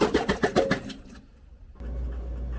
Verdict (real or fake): real